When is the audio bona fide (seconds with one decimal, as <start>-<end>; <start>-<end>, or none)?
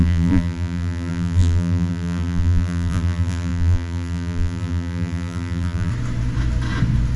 5.9-7.2